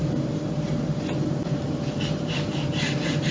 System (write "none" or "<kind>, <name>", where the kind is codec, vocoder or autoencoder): vocoder, BigVGAN v2